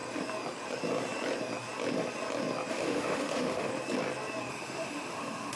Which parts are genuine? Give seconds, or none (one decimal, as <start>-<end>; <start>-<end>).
0.0-2.7; 3.7-4.5